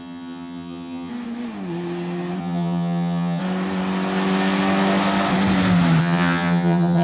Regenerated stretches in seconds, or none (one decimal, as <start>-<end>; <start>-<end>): 0.0-1.1; 2.4-3.4; 6.0-7.0